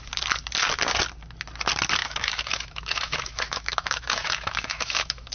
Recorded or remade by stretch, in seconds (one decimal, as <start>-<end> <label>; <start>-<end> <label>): 0.0-2.0 recorded; 2.0-5.3 remade